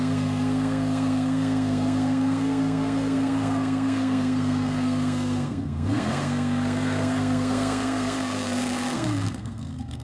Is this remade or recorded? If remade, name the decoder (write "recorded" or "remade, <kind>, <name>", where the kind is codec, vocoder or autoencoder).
remade, codec, SNAC